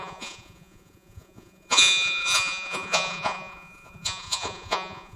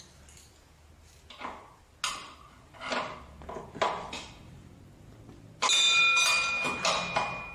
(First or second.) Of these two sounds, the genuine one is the second